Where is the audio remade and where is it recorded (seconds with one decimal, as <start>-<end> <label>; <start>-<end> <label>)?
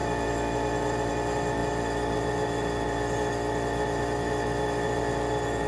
0.0-5.7 recorded